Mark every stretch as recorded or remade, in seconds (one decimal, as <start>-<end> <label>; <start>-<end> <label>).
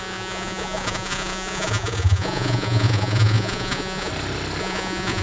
0.0-4.1 remade; 4.1-4.6 recorded; 4.6-5.2 remade